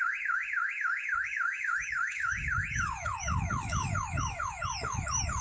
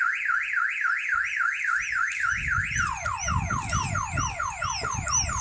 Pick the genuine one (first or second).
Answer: second